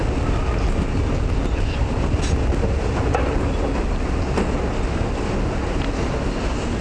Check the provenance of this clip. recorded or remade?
recorded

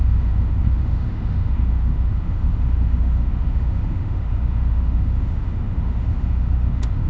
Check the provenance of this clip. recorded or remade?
remade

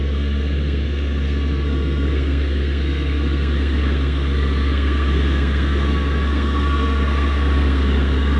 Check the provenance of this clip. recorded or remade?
remade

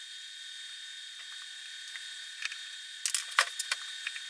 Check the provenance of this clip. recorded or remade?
recorded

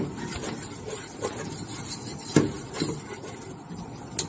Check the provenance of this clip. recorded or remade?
recorded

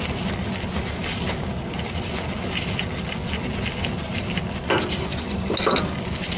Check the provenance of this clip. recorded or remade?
recorded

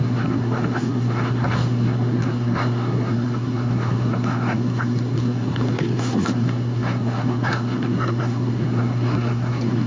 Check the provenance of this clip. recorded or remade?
remade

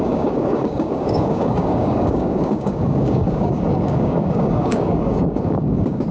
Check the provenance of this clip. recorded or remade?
remade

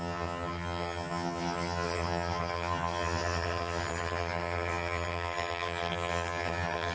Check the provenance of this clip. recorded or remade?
remade